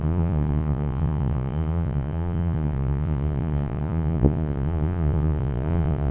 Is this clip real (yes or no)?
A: no